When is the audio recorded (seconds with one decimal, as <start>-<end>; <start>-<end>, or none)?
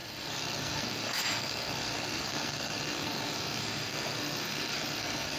none